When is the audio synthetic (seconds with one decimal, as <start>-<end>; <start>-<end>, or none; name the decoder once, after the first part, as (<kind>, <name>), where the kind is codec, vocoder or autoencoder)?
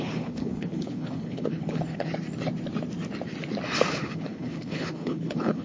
0.0-2.1 (codec, HILCodec); 3.9-5.6